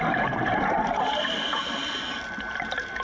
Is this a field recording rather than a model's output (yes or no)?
yes